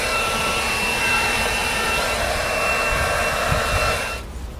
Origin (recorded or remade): recorded